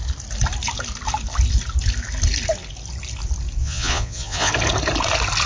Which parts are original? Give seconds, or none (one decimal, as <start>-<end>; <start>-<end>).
0.0-3.6; 4.5-5.5